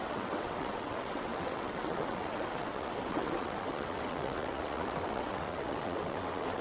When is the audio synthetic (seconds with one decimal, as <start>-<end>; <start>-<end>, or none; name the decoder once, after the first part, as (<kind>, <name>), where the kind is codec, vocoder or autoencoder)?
0.0-6.6 (vocoder, WaveNeXt)